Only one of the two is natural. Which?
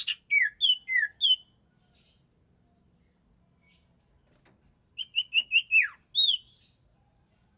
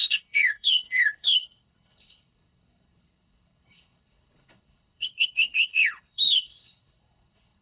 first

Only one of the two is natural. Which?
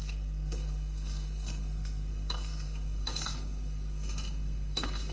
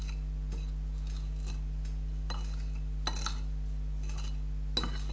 second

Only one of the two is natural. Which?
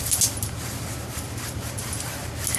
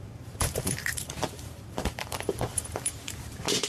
first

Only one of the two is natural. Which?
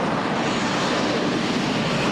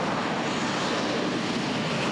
second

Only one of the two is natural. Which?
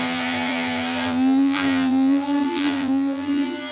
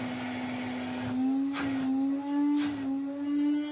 second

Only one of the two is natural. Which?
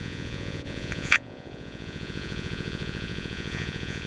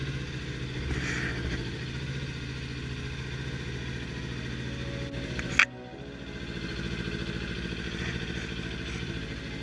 second